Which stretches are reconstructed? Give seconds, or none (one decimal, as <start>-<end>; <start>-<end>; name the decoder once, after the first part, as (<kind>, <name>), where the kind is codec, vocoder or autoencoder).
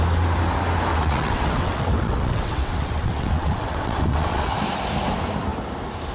0.9-4.6 (vocoder, WaveNeXt)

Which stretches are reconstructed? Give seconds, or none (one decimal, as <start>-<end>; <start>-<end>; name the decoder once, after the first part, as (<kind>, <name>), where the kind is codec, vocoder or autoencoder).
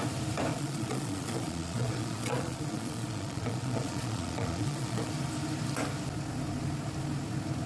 0.5-5.1 (vocoder, Vocos)